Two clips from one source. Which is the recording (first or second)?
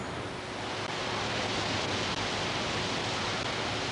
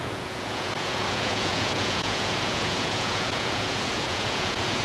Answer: first